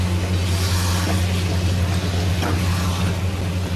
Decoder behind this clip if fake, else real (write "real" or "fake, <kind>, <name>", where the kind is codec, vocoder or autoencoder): real